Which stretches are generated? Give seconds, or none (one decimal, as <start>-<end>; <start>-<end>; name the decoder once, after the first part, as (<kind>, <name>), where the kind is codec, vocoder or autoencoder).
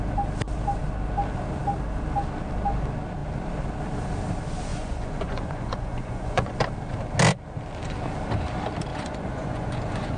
4.7-6.6 (vocoder, Vocos); 8.9-10.2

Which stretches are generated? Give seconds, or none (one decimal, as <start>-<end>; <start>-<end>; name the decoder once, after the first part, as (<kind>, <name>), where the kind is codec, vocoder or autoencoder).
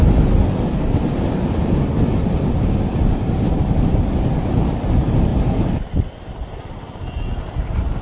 none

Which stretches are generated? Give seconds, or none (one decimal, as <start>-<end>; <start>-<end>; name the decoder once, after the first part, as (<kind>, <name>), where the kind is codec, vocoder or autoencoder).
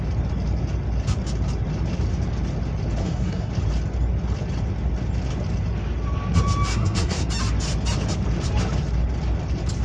3.0-3.5 (codec, SNAC); 6.7-7.3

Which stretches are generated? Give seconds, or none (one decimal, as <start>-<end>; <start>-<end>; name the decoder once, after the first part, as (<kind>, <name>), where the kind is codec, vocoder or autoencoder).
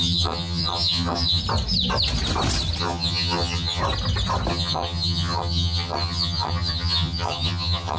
0.0-1.4 (vocoder, HiFi-GAN); 2.8-3.8; 4.5-8.0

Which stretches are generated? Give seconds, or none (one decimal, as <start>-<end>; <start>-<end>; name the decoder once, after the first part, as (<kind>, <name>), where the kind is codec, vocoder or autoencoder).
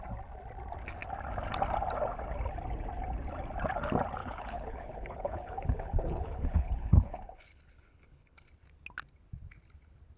4.2-8.5 (codec, HILCodec)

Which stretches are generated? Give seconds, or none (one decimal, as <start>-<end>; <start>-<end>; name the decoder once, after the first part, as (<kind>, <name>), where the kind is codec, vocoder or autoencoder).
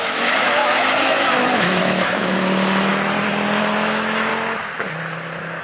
0.0-2.9 (autoencoder, DAC-VAE); 3.6-4.3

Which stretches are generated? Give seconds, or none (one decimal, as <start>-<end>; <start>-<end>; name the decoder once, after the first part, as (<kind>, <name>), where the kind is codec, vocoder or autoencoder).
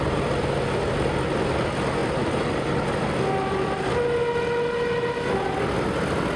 none